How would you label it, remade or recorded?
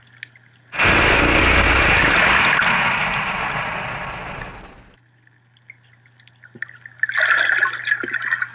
recorded